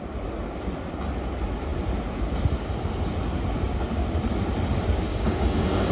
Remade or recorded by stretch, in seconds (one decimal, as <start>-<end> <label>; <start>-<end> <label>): 0.0-5.1 recorded; 5.1-5.9 remade